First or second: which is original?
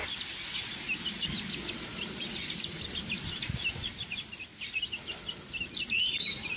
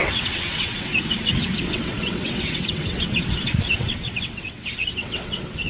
first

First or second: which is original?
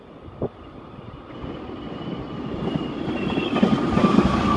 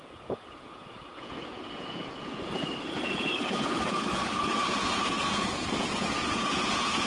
first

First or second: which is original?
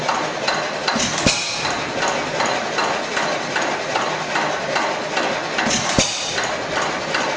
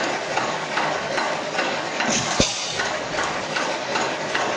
first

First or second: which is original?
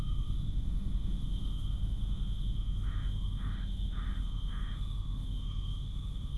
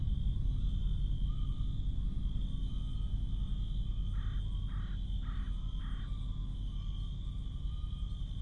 second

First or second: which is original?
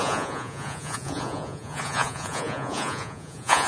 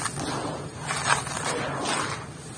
second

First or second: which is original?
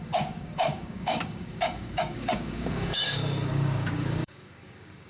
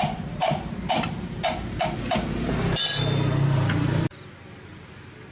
second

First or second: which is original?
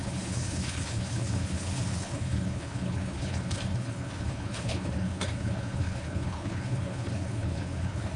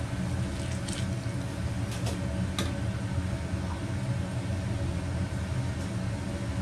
second